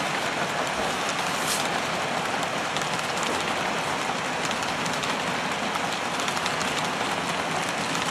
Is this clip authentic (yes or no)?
yes